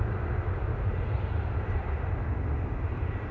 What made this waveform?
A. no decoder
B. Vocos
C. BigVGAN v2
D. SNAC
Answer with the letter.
A